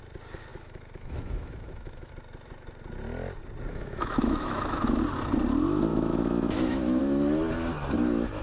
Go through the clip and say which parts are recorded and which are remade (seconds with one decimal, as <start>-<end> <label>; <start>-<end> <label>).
0.0-0.5 recorded; 0.5-2.1 remade; 2.1-3.7 recorded; 3.7-5.0 remade; 5.0-5.9 recorded; 5.9-7.0 remade; 7.0-8.4 recorded

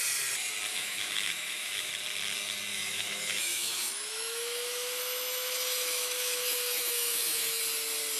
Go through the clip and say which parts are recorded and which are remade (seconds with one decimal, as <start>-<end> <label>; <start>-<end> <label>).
0.0-0.7 recorded; 0.7-1.9 remade; 1.9-2.7 recorded; 2.7-7.6 remade; 7.6-8.2 recorded

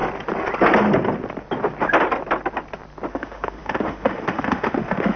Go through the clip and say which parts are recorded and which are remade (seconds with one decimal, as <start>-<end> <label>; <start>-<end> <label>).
0.0-3.1 recorded; 3.1-5.2 remade

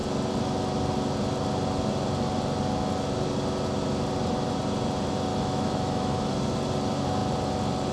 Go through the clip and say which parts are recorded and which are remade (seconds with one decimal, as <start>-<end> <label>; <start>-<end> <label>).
0.0-5.3 recorded; 5.3-6.3 remade; 6.3-7.9 recorded

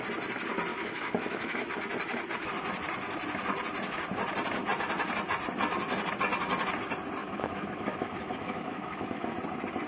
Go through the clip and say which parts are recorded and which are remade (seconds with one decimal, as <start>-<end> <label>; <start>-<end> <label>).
0.0-0.7 recorded; 0.7-1.7 remade; 1.7-7.2 recorded; 7.2-9.3 remade; 9.3-9.9 recorded